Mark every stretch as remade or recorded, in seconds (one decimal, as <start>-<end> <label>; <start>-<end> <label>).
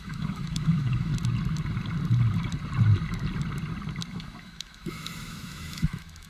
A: 0.0-1.1 remade; 1.1-4.1 recorded; 4.1-6.3 remade